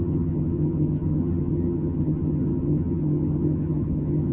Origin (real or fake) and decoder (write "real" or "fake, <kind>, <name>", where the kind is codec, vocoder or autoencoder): fake, vocoder, HiFi-GAN